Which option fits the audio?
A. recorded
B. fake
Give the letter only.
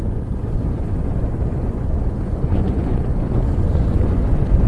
B